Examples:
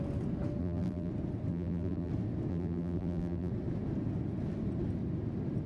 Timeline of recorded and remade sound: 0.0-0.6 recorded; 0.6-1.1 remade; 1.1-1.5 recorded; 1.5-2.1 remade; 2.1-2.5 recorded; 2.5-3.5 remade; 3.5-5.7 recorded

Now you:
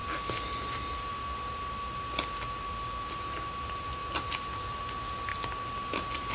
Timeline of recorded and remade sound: 0.0-4.0 recorded; 4.0-4.8 remade; 4.8-6.3 recorded

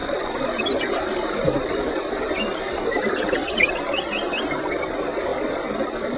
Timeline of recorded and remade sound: 0.0-3.7 remade; 3.7-6.2 recorded

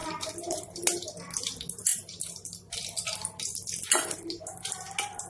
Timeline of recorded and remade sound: 0.0-0.8 remade; 0.8-1.9 recorded; 1.9-4.4 remade; 4.4-5.3 recorded

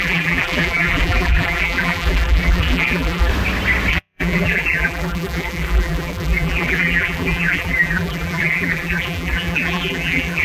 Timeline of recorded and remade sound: 0.0-3.3 remade; 3.3-3.9 recorded; 3.9-10.4 remade

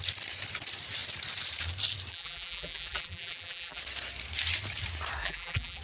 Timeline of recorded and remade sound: 0.0-2.1 recorded; 2.1-3.8 remade; 3.8-5.2 recorded; 5.2-5.8 remade

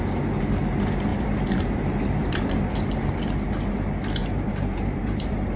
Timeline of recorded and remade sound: 0.0-1.1 recorded; 1.1-2.7 remade; 2.7-4.2 recorded; 4.2-5.6 remade